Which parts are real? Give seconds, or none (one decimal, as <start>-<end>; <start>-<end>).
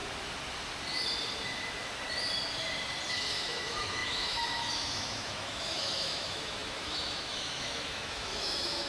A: 0.0-3.1